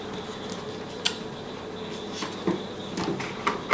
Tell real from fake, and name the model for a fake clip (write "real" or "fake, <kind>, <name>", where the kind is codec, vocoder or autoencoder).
real